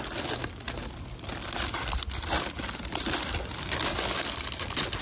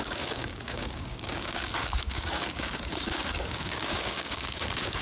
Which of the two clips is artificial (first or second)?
second